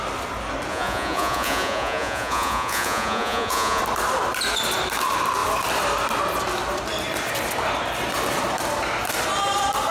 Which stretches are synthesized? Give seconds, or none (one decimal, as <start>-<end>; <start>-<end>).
0.7-3.8